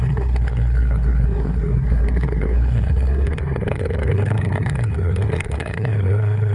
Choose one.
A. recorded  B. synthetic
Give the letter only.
B